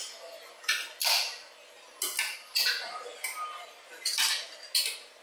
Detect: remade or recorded recorded